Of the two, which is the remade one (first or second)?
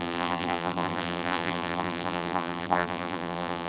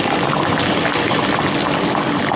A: first